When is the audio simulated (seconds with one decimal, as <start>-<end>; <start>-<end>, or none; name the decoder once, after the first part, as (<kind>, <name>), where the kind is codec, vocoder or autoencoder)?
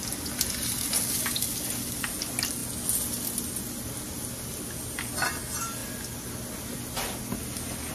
none